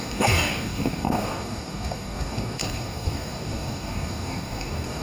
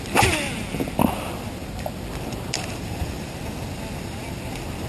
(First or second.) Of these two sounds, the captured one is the second